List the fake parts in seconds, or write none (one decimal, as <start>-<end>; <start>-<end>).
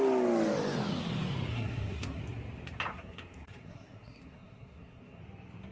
1.5-2.2; 2.9-5.2